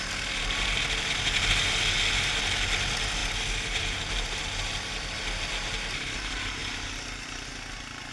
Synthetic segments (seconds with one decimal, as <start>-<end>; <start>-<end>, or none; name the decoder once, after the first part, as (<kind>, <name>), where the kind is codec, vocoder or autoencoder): none